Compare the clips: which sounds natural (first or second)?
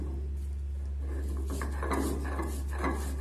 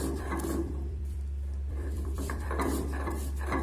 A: first